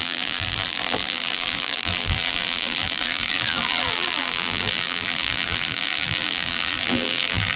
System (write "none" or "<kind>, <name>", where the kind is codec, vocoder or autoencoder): vocoder, BigVGAN v2